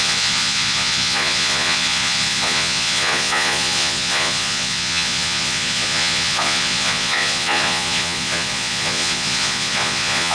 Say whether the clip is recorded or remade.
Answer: remade